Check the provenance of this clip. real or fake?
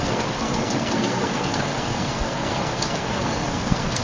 fake